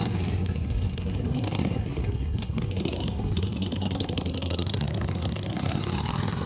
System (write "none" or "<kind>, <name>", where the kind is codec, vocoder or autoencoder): codec, SNAC